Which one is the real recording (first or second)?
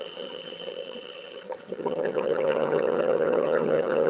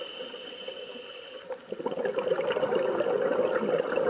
second